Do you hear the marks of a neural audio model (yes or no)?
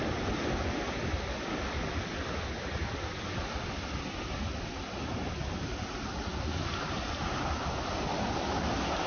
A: no